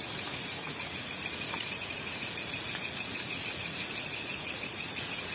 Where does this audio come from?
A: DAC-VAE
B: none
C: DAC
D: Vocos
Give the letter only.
D